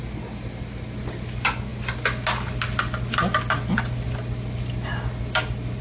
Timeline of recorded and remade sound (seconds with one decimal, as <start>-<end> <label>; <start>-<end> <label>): 0.0-5.8 recorded

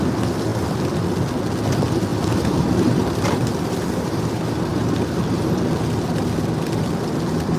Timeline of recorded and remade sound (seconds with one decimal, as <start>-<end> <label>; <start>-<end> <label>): 0.0-0.5 recorded; 0.5-1.3 remade; 1.3-2.1 recorded; 2.1-5.2 remade; 5.2-7.6 recorded

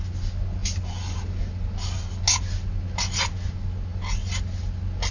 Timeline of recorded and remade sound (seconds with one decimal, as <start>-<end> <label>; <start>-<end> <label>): 0.0-5.1 recorded

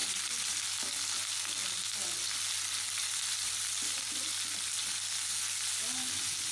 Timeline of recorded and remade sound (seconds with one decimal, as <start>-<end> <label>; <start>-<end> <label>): 0.0-0.6 remade; 0.6-1.6 recorded; 1.6-4.1 remade; 4.1-6.5 recorded